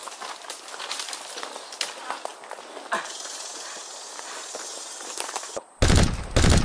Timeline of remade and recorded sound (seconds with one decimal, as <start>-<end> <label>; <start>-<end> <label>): 0.0-6.6 recorded